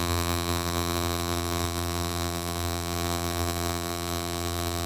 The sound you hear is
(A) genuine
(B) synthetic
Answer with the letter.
B